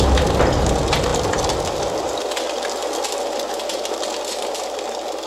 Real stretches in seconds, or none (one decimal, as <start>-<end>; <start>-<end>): 0.0-5.3